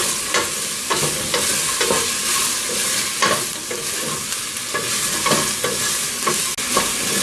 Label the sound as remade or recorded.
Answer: recorded